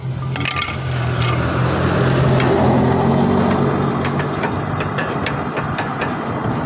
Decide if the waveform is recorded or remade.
recorded